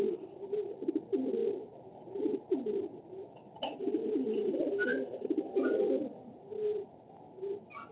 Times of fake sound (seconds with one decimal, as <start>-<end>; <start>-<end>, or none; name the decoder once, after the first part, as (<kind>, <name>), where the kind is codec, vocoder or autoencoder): none

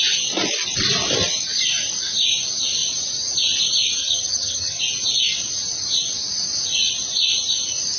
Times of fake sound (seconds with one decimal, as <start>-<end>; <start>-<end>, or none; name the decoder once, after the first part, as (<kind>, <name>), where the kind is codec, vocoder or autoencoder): 4.0-4.8 (vocoder, HiFi-GAN)

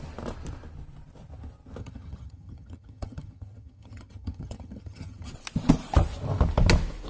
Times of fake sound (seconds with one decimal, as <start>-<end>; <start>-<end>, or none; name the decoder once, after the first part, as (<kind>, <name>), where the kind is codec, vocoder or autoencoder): 1.8-5.3 (vocoder, HiFi-GAN)